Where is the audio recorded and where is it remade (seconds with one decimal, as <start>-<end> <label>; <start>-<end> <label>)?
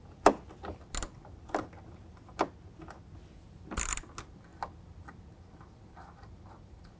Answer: 0.0-7.0 recorded